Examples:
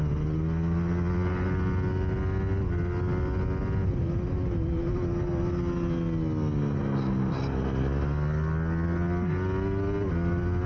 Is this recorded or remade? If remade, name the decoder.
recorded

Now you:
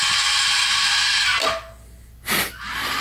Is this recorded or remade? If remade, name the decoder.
recorded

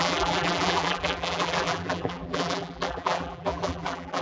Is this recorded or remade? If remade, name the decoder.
remade, vocoder, BigVGAN v2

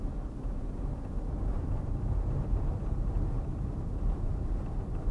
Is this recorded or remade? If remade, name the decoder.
remade, vocoder, BigVGAN v2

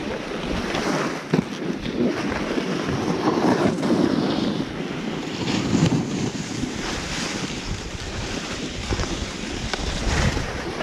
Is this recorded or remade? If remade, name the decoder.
recorded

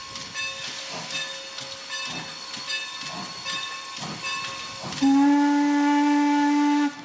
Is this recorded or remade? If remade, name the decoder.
recorded